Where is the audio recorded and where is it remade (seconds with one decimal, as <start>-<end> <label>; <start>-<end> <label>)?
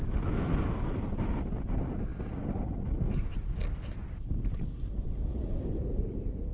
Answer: 0.0-6.5 recorded